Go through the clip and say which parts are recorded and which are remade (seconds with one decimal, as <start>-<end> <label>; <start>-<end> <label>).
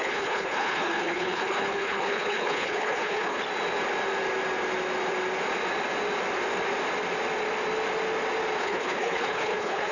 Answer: 0.0-3.4 remade; 3.4-8.6 recorded; 8.6-9.9 remade